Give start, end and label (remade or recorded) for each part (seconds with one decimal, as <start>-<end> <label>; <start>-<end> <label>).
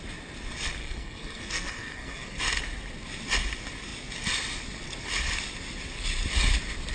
0.0-0.8 recorded; 0.8-2.4 remade; 2.4-6.9 recorded